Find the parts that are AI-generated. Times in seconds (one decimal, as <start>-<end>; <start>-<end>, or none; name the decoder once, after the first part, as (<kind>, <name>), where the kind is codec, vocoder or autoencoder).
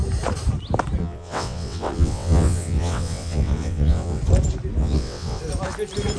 1.0-4.2 (vocoder, WaveNeXt); 4.8-5.4